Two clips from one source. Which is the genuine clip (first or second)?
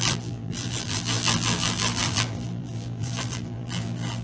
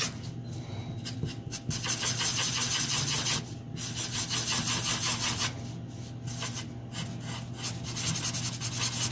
second